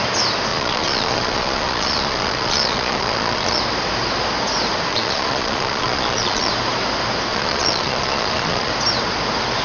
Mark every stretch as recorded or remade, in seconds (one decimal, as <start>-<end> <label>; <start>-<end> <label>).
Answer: 0.0-0.5 recorded; 0.5-3.6 remade; 3.6-4.9 recorded; 4.9-6.5 remade; 6.5-7.3 recorded; 7.3-8.7 remade; 8.7-9.6 recorded